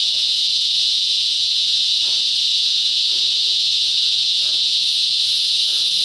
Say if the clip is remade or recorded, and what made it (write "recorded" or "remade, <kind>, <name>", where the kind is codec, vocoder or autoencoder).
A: remade, vocoder, Vocos